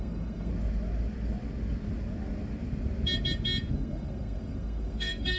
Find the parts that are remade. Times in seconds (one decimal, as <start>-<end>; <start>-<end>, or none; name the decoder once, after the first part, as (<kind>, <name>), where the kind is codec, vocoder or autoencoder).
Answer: 0.0-0.5 (codec, SNAC); 3.7-5.4